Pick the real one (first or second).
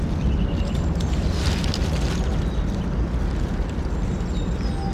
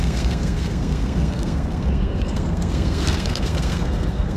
first